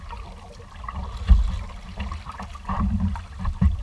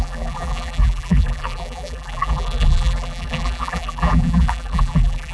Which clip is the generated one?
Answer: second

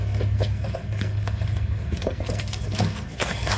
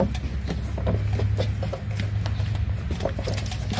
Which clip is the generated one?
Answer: first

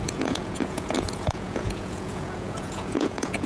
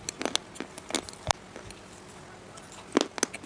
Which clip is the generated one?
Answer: first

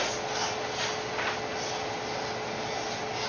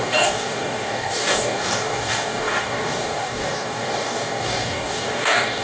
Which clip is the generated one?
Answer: second